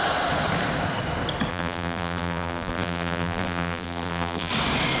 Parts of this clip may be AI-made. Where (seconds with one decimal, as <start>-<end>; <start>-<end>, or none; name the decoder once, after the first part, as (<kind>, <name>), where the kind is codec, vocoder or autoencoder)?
1.5-4.5 (vocoder, BigVGAN v2)

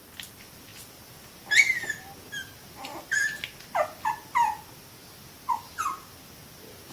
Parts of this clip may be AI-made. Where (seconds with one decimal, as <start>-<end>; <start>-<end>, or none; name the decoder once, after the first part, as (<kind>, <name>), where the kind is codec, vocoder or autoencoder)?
none

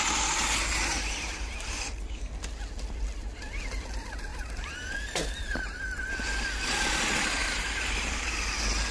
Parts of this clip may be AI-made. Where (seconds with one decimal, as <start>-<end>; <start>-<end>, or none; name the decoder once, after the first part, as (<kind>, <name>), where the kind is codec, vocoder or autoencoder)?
4.3-5.5 (vocoder, BigVGAN v2); 7.4-8.3